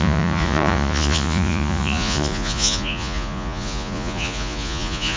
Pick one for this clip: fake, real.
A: fake